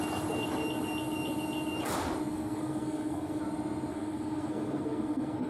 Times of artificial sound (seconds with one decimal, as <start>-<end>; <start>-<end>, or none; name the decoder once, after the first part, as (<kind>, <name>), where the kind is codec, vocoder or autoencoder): 2.3-3.4 (codec, SNAC); 3.9-5.5